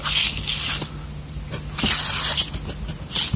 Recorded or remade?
recorded